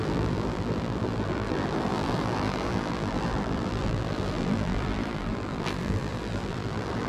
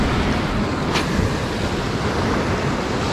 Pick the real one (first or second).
second